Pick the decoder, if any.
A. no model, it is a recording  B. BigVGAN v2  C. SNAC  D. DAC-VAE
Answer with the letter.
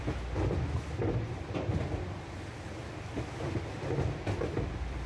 B